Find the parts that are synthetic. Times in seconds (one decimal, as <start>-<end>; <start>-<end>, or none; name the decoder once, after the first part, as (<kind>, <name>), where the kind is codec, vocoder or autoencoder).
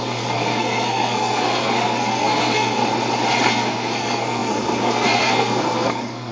0.0-2.8 (codec, SNAC); 3.5-6.3